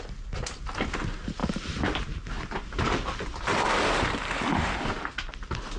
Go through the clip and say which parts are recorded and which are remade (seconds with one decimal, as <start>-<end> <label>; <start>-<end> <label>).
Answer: 0.0-5.8 recorded